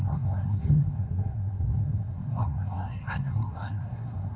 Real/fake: fake